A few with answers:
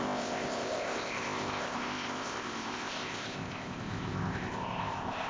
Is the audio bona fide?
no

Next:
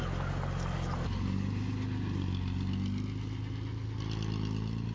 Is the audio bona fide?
yes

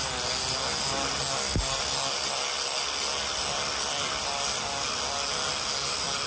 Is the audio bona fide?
yes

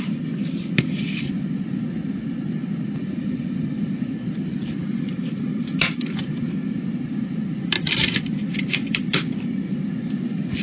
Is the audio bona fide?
yes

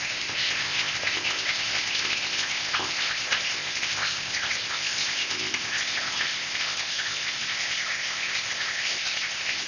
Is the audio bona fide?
no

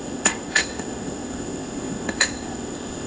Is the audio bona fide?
no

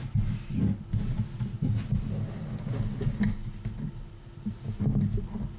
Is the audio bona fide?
yes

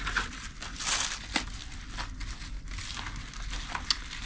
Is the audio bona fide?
yes